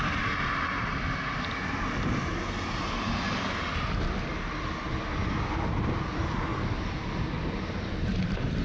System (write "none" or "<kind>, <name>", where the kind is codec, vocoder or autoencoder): none